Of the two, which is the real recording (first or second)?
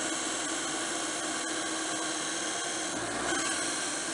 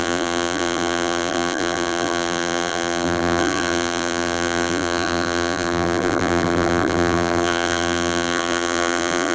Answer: first